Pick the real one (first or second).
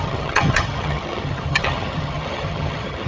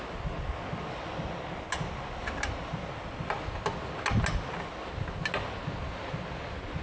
second